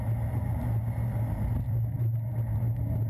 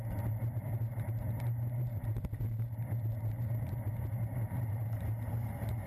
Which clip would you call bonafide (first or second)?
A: first